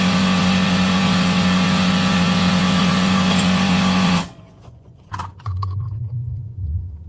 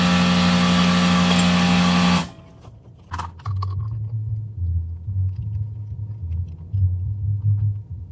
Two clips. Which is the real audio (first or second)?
second